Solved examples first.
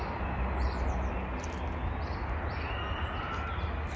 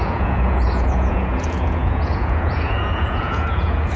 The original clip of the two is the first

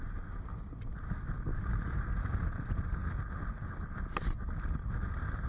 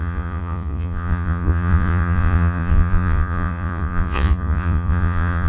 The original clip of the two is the first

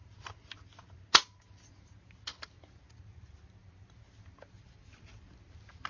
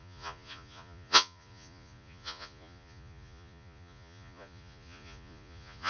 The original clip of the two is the first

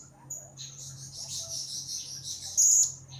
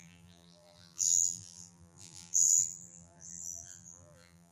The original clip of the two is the first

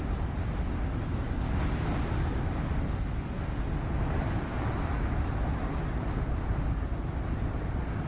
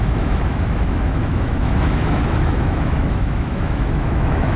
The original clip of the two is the first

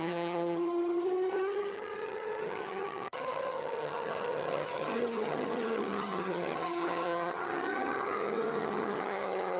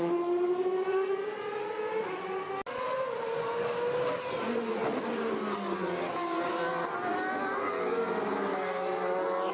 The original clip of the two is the second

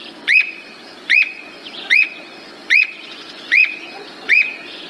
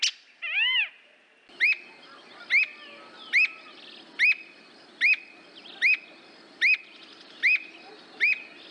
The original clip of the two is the second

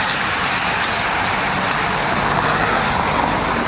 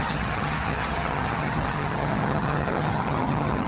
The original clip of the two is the first